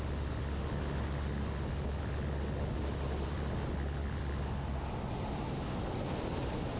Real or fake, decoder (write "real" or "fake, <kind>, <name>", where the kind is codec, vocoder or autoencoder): real